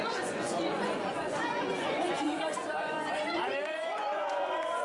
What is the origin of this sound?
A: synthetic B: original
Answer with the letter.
A